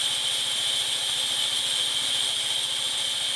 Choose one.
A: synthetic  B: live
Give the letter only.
B